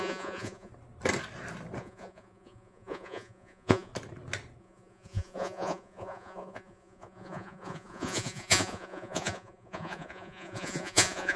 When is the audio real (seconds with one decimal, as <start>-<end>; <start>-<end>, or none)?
0.7-1.8; 3.9-4.6